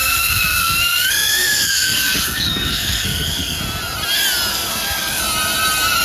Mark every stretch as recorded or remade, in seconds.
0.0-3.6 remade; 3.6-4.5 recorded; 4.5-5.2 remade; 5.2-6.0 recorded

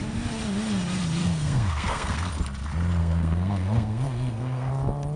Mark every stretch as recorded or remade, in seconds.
0.0-1.2 recorded; 1.2-2.3 remade; 2.3-3.0 recorded; 3.0-4.7 remade; 4.7-5.2 recorded

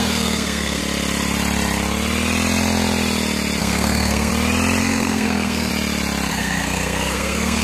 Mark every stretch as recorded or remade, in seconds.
0.0-0.8 remade; 0.8-3.6 recorded; 3.6-4.3 remade; 4.3-4.8 recorded; 4.8-5.7 remade; 5.7-6.3 recorded; 6.3-7.6 remade

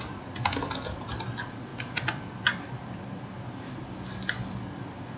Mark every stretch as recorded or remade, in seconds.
0.0-5.2 recorded

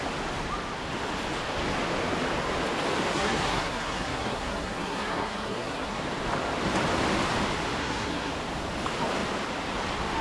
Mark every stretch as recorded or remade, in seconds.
0.0-3.1 recorded; 3.1-6.0 remade; 6.0-7.8 recorded; 7.8-8.3 remade; 8.3-10.2 recorded